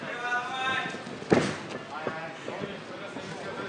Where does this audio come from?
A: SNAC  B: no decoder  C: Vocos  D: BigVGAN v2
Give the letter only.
B